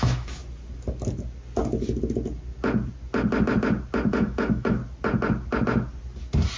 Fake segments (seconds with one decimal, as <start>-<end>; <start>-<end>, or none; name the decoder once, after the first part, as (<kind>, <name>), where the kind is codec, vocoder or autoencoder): 0.0-0.4 (autoencoder, DAC-VAE); 4.1-4.8